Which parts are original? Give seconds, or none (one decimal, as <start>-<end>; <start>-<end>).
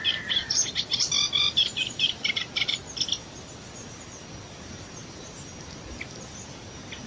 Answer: 0.4-4.6; 5.5-6.2